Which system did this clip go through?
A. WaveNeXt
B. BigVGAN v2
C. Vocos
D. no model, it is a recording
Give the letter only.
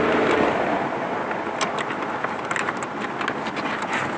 D